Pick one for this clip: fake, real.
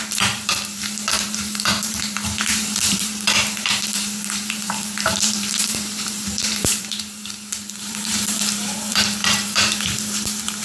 fake